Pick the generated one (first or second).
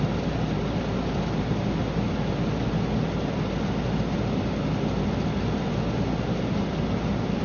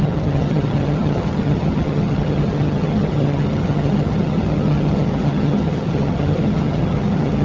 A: second